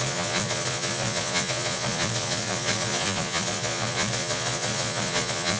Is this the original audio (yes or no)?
no